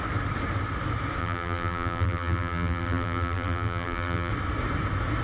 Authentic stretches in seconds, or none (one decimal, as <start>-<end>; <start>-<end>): 0.0-1.2; 4.3-5.2

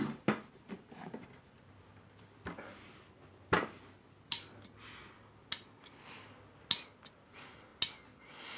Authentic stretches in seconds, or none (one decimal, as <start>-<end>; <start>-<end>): 0.0-8.6

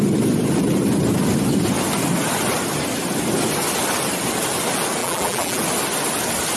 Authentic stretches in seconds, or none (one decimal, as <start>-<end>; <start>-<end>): 0.0-5.0; 5.6-6.6

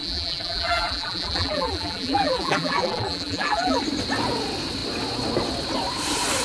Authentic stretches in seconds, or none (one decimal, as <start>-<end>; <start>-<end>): 3.8-6.4